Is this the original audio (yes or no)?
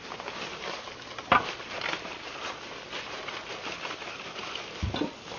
yes